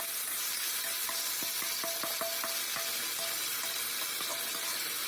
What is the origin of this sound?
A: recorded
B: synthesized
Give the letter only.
A